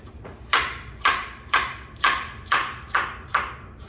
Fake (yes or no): no